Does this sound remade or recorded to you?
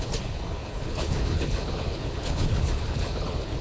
remade